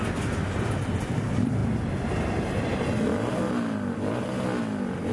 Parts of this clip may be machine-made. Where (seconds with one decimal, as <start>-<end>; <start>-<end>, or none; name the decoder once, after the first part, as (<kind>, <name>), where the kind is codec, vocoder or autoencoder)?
none